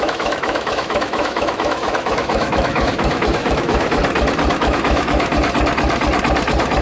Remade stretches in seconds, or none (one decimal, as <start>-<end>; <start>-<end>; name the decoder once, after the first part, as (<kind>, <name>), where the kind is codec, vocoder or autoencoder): 0.0-4.0 (autoencoder, DAC-VAE); 4.5-5.3